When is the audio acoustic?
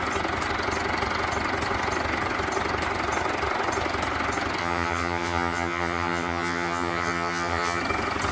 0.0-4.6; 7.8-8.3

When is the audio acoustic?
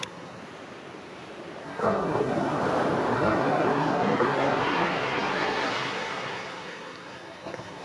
0.4-1.6; 2.6-3.1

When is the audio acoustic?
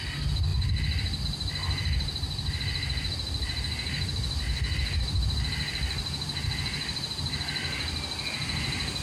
0.0-9.0